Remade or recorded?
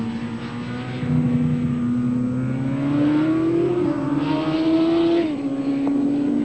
recorded